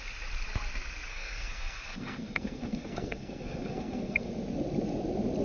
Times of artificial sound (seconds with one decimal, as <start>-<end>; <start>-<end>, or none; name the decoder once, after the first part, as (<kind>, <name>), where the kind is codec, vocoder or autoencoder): 1.1-4.3 (codec, SNAC)